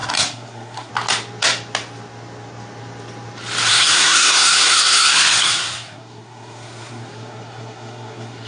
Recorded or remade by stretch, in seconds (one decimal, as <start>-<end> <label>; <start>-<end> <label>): 0.0-0.9 remade; 0.9-3.7 recorded; 3.7-8.5 remade